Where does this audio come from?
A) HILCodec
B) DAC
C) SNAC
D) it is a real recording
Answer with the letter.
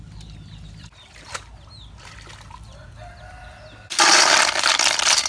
D